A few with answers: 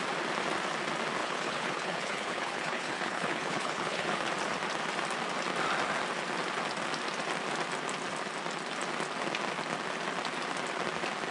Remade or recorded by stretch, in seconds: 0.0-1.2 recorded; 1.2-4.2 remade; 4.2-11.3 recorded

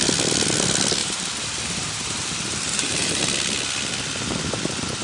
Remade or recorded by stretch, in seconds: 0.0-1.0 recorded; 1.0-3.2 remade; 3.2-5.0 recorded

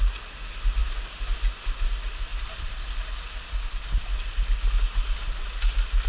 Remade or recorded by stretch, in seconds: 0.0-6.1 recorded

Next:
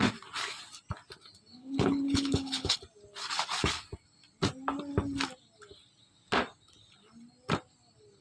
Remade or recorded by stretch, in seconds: 0.0-1.5 recorded; 1.5-2.8 remade; 2.8-8.2 recorded